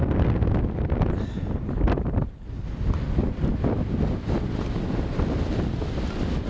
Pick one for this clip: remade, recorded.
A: recorded